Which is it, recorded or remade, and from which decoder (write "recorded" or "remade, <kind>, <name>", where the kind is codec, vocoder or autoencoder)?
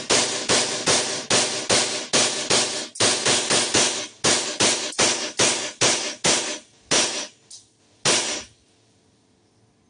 recorded